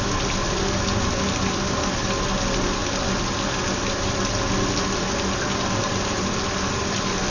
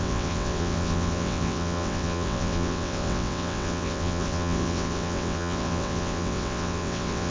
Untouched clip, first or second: first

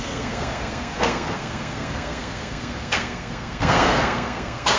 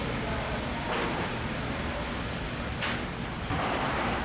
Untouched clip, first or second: second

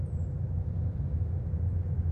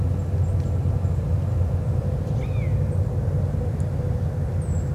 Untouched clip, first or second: second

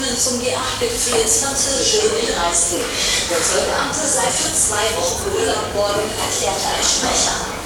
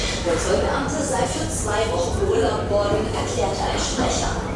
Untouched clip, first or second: second